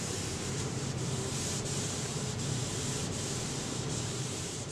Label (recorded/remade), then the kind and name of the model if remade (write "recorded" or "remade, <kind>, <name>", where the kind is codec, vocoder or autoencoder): remade, vocoder, BigVGAN v2